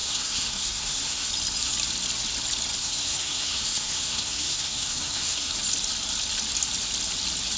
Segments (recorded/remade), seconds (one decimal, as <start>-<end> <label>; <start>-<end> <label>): 0.0-1.3 remade; 1.3-2.8 recorded; 2.8-5.5 remade; 5.5-7.6 recorded

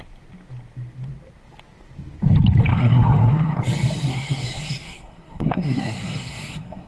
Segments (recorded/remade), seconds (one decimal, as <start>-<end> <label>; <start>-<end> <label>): 0.0-2.7 recorded; 2.7-3.6 remade; 3.6-4.1 recorded; 4.1-6.9 remade

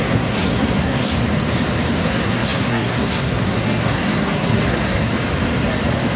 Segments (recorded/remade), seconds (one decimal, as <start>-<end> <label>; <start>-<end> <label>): 0.0-1.1 remade; 1.1-2.0 recorded; 2.0-5.1 remade; 5.1-6.2 recorded

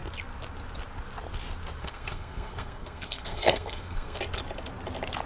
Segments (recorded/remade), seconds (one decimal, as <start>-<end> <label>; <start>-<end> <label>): 0.0-1.8 recorded; 1.8-4.2 remade; 4.2-5.3 recorded

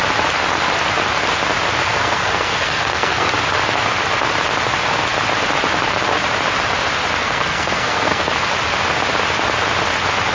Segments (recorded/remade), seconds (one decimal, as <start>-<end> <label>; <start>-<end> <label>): 0.0-1.8 recorded; 1.8-3.3 remade; 3.3-7.2 recorded; 7.2-8.3 remade; 8.3-10.3 recorded

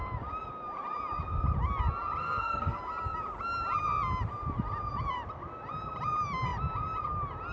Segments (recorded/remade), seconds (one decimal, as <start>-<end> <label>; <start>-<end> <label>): 0.0-2.2 recorded; 2.2-2.8 remade; 2.8-7.5 recorded

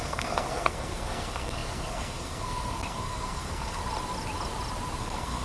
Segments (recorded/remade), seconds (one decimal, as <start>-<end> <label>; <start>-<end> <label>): 0.0-3.8 remade; 3.8-5.0 recorded; 5.0-5.4 remade